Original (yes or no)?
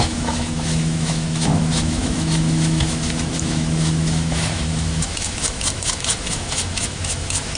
no